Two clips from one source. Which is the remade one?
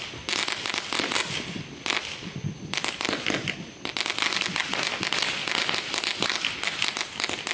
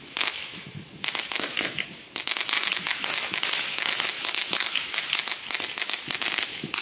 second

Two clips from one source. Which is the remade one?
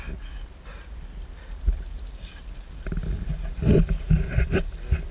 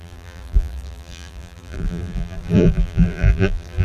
second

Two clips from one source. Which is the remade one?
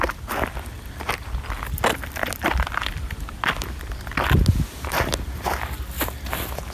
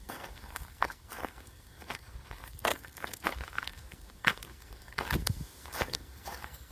second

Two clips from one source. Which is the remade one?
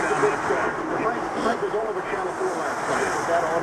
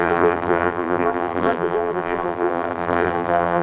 second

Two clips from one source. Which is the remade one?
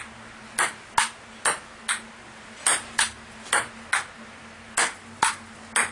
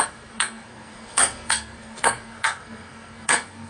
second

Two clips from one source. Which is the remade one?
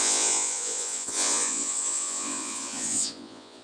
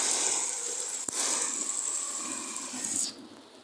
first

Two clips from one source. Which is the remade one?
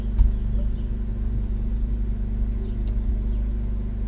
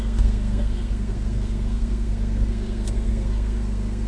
second